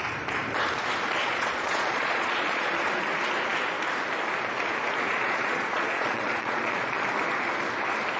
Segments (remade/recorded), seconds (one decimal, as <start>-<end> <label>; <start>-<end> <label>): 0.0-1.2 recorded; 1.2-2.7 remade; 2.7-5.1 recorded; 5.1-6.9 remade; 6.9-8.2 recorded